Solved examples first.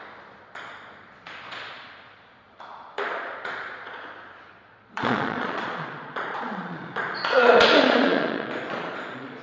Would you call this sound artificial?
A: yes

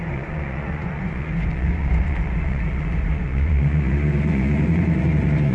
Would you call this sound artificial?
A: yes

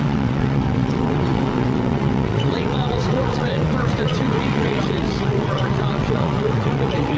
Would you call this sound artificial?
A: yes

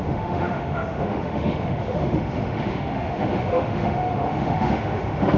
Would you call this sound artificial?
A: yes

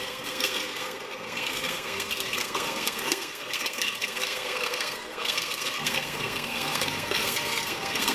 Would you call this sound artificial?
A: yes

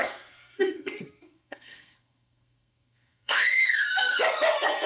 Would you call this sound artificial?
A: yes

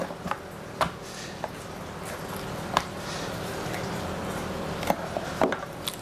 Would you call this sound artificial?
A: no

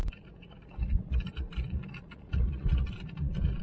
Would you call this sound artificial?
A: yes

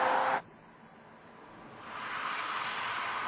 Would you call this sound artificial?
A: no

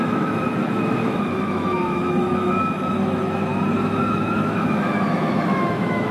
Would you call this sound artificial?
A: yes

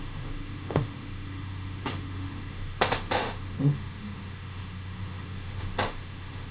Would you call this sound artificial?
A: yes